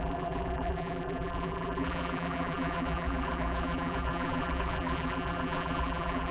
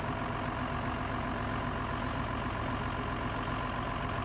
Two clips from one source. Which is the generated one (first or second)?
first